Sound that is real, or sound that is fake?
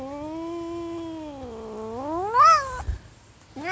real